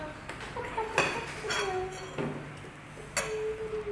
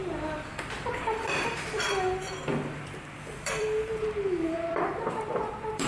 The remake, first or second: second